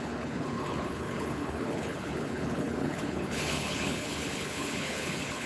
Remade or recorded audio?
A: remade